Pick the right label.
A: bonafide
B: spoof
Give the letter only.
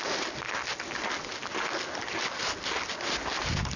A